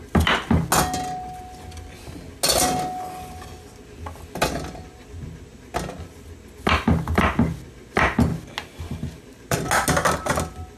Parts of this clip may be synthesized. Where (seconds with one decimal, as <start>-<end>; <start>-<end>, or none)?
none